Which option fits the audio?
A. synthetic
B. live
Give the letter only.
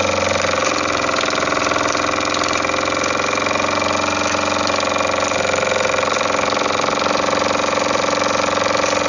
B